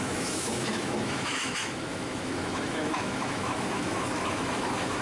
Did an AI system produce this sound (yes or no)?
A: yes